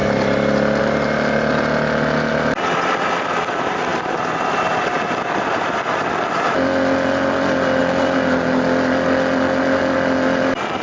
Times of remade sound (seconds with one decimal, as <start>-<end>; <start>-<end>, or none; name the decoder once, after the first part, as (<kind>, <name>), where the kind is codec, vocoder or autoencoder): none